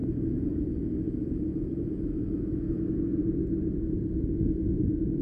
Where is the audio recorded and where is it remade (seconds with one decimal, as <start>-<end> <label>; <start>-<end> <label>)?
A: 0.0-3.2 remade; 3.2-4.3 recorded; 4.3-5.2 remade